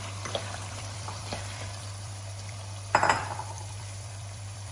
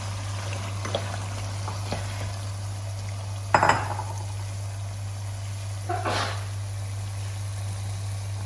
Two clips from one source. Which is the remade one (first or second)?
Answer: first